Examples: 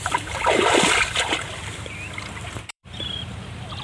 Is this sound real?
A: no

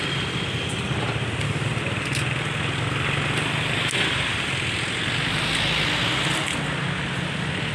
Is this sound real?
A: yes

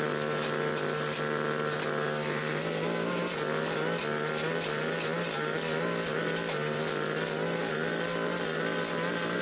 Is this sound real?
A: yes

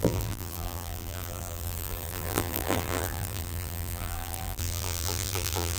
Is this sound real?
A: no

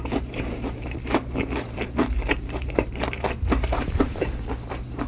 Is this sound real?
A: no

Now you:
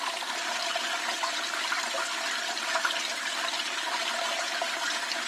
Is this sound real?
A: no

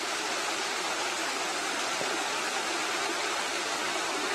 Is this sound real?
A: no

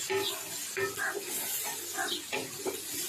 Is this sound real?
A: yes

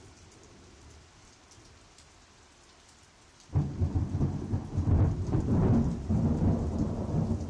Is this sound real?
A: yes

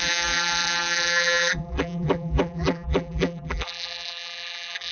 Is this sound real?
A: no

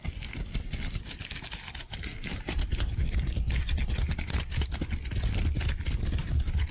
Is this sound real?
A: yes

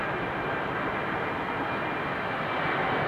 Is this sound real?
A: yes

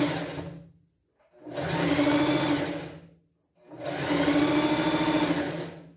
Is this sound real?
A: yes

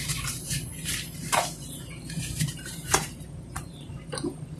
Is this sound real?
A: no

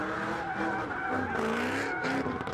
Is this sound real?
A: yes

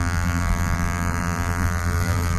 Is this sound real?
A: no